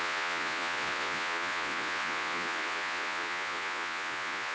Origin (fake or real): fake